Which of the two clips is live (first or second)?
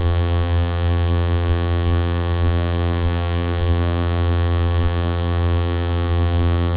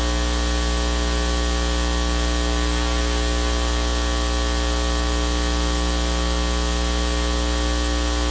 second